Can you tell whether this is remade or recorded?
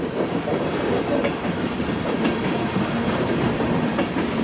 remade